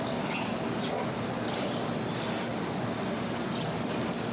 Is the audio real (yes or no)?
yes